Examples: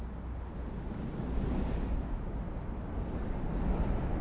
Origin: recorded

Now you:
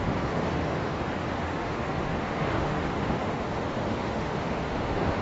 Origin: remade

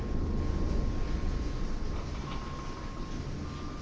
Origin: recorded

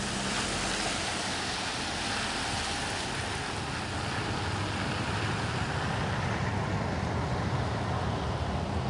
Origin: recorded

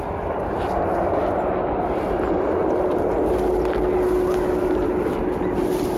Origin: recorded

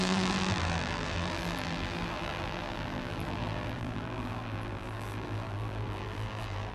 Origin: remade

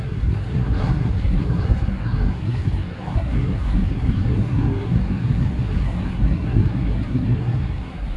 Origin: remade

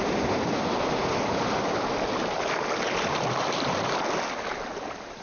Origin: recorded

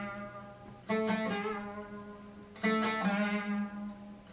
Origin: recorded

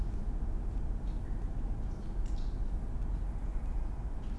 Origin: recorded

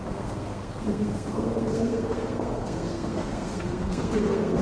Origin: remade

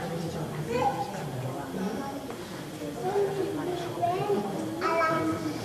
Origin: recorded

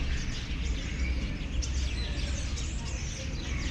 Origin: recorded